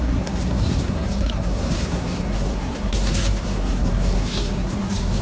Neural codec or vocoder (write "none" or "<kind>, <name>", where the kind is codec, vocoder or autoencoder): codec, SNAC